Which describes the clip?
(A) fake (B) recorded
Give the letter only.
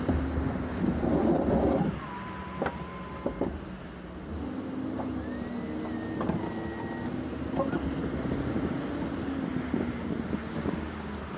B